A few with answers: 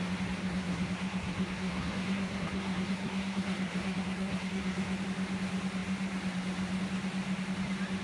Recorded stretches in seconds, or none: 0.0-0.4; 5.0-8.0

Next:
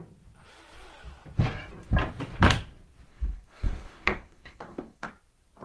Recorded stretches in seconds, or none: 0.0-3.1; 5.1-5.6

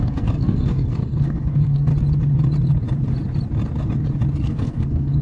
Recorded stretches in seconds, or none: 1.9-4.4

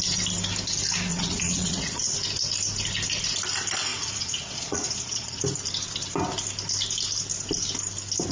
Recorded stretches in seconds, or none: 0.0-1.1; 2.0-3.9; 5.4-8.3

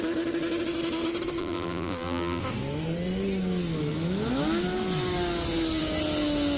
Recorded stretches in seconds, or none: 0.0-1.4; 2.4-6.6